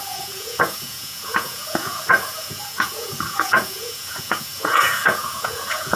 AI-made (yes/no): yes